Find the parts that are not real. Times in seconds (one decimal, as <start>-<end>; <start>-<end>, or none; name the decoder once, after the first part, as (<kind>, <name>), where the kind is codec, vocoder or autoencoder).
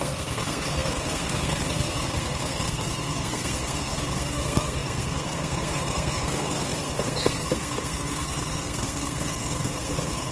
0.0-10.3 (codec, SNAC)